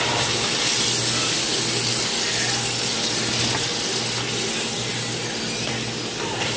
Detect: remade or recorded recorded